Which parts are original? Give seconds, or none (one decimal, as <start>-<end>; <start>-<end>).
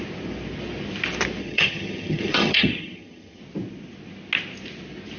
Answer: 0.0-1.4; 3.4-5.2